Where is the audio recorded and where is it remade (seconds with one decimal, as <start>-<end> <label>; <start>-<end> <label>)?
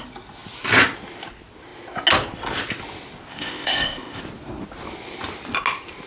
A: 0.0-3.3 recorded; 3.3-4.2 remade; 4.2-6.1 recorded